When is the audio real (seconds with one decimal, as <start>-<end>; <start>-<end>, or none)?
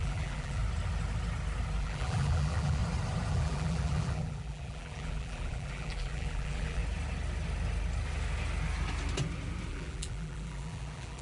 0.6-1.8; 2.8-3.3; 6.8-9.7